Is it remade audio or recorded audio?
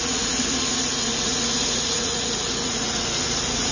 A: remade